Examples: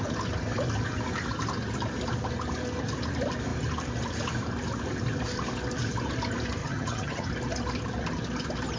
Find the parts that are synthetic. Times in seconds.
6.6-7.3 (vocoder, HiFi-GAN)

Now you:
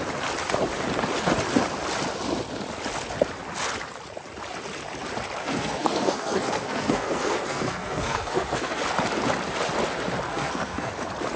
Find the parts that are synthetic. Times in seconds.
5.4-8.8 (codec, SNAC); 10.3-10.9

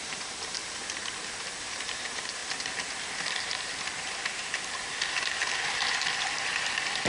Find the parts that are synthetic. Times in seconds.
0.0-2.4 (vocoder, BigVGAN v2); 3.4-5.4; 6.2-7.1

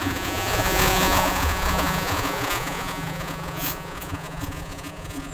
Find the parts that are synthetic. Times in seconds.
0.0-5.3 (vocoder, Vocos)